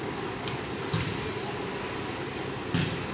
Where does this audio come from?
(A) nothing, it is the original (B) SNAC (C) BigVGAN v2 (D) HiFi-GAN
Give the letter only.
A